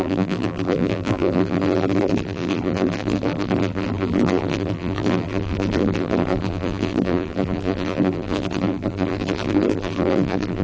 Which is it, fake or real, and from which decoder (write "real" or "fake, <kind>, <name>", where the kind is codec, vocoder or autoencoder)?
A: fake, vocoder, BigVGAN v2